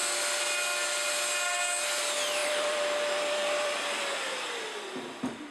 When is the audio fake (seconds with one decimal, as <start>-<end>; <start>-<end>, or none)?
2.4-4.6

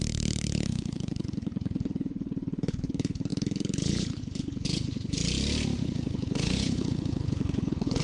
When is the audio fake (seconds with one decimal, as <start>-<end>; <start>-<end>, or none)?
0.0-5.2; 5.8-8.0

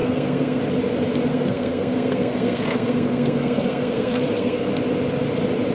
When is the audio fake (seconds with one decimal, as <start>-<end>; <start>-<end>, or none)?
0.0-0.6; 1.3-4.7

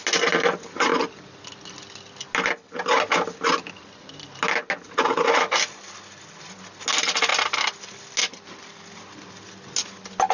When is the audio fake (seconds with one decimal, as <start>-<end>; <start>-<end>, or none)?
none

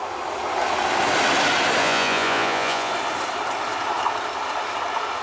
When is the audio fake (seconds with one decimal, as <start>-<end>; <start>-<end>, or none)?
1.8-2.9

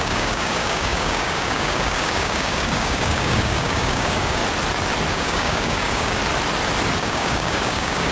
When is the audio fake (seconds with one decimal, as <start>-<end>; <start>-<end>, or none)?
0.0-4.4; 5.1-6.2; 7.0-8.1

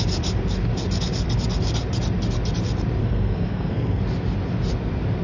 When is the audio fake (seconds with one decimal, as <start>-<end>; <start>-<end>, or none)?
3.0-4.0

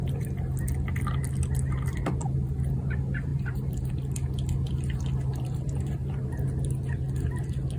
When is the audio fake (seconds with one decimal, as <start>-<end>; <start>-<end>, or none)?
3.3-3.9; 5.3-6.2